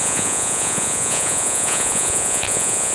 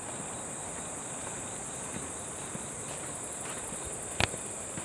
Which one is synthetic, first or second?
first